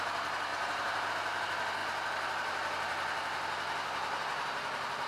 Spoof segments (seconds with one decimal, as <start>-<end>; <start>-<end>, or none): 0.5-1.1